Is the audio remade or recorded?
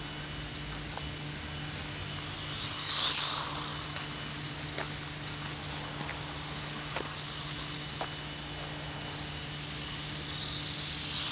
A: recorded